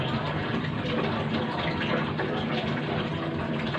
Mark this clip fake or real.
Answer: real